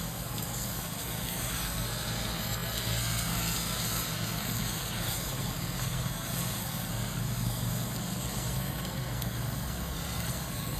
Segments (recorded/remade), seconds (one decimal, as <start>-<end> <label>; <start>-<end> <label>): 0.0-10.8 remade